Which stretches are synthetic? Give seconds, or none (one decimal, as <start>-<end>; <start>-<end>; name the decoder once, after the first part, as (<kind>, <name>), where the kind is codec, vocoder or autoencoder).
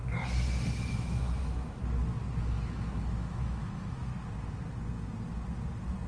0.9-1.8 (autoencoder, DAC-VAE); 2.4-4.1